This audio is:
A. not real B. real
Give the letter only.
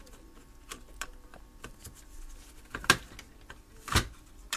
B